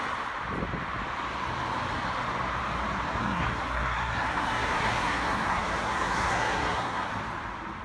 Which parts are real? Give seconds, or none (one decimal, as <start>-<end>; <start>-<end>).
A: 0.0-3.2; 7.1-7.8